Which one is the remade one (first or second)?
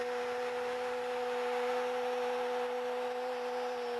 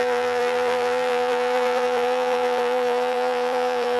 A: second